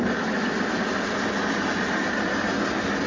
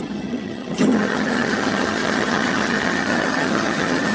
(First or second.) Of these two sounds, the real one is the first